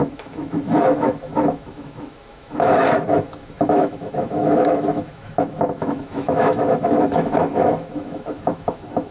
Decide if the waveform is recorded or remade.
remade